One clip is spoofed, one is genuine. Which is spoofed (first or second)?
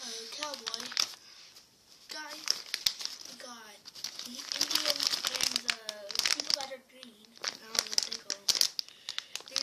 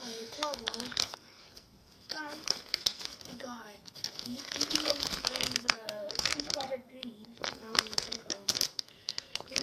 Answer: second